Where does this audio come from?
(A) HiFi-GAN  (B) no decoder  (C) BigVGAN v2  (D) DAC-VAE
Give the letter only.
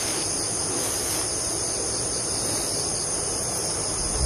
B